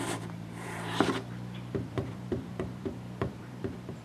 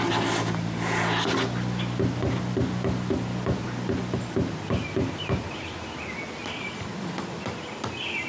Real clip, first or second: second